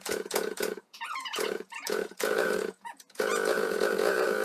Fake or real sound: fake